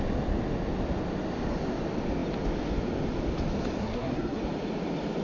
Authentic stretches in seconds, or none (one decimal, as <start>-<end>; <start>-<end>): 0.0-3.8; 4.4-5.2